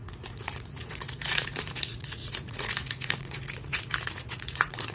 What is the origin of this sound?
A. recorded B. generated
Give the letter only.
B